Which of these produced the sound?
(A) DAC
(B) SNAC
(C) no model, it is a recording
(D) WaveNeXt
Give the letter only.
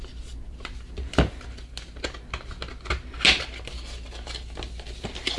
C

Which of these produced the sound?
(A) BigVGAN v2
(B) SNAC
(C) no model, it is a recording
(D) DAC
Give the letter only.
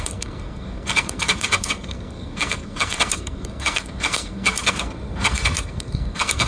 B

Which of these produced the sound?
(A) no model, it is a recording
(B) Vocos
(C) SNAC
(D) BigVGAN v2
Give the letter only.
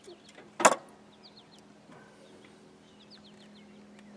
A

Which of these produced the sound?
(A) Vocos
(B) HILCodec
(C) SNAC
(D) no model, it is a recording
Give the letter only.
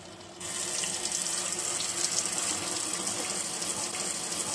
D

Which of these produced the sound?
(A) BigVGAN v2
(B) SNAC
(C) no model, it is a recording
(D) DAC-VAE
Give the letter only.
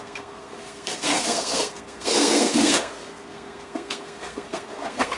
B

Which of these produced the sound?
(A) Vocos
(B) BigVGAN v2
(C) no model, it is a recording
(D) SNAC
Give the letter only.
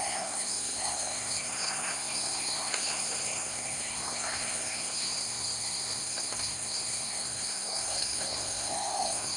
D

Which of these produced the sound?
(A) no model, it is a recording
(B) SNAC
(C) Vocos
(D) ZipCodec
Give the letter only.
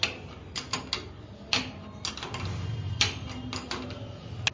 A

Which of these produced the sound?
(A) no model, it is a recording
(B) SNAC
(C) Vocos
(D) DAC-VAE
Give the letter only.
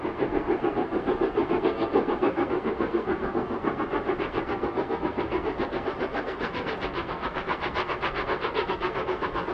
B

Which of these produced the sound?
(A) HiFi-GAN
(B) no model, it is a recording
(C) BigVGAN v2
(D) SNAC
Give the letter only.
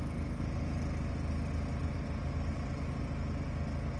B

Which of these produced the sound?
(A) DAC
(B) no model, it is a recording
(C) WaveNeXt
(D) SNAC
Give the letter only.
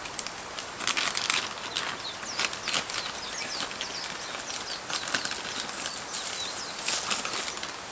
B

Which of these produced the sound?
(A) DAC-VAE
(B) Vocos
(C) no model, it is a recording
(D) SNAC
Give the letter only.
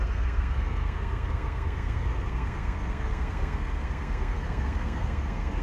D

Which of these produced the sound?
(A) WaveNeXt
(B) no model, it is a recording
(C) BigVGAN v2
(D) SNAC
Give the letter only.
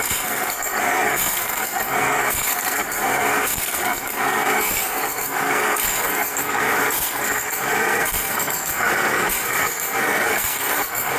D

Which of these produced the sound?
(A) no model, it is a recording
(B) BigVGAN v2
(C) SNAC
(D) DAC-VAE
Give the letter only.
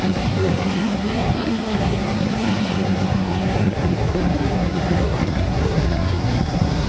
C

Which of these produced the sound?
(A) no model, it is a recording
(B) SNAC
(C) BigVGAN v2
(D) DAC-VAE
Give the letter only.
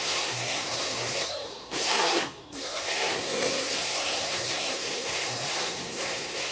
B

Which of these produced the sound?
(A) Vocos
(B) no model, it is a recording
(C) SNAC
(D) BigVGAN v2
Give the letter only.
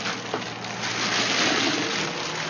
B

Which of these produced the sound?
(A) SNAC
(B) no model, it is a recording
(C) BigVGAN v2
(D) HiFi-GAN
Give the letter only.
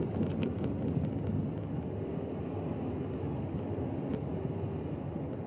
B